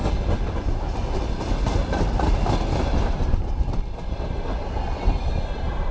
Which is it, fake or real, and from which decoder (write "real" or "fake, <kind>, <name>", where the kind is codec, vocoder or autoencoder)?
real